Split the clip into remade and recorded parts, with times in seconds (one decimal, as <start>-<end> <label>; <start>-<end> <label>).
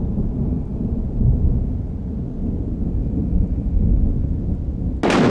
0.0-5.3 recorded